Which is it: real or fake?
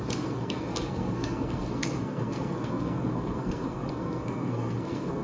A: fake